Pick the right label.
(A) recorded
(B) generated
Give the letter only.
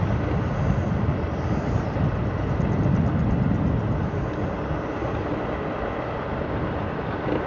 A